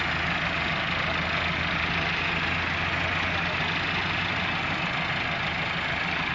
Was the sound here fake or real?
real